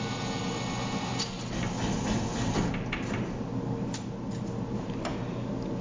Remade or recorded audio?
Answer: recorded